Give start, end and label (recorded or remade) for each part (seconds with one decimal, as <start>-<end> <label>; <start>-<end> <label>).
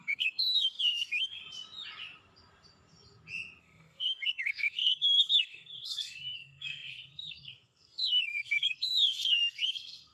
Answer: 0.0-1.4 remade; 1.4-3.6 recorded; 3.6-10.1 remade